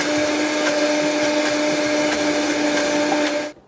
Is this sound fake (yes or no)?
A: no